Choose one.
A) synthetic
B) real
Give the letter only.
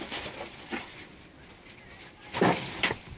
B